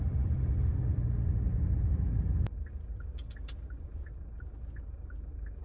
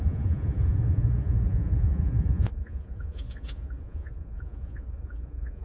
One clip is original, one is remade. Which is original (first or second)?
first